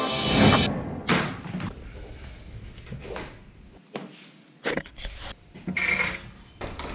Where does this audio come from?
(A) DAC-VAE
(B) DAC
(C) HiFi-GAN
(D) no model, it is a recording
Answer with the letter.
D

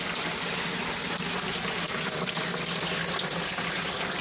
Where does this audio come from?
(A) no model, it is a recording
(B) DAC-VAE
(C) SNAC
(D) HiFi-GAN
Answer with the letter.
A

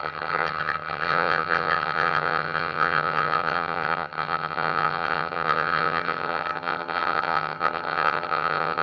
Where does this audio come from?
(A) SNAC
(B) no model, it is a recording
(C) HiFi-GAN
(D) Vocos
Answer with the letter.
C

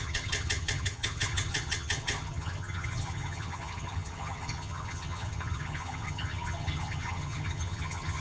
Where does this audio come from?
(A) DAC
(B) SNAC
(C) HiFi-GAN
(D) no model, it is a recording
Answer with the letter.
C